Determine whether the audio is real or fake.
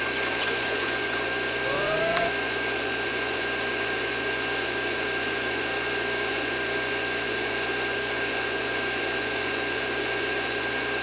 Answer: fake